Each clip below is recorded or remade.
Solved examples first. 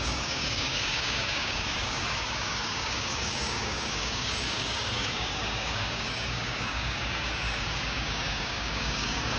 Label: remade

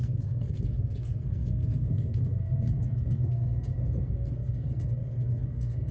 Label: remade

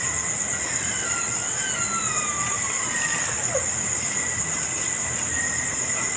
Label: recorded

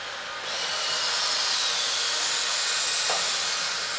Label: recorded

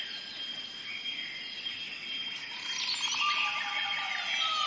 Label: recorded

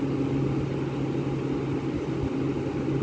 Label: recorded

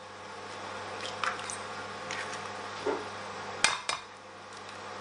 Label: recorded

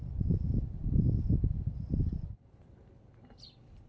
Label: recorded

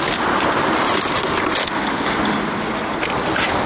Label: recorded